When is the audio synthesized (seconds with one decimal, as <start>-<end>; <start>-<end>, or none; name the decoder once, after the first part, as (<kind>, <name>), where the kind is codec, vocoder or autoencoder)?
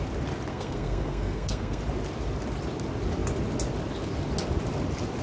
0.5-1.8 (codec, SNAC)